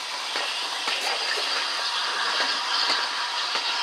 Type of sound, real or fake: real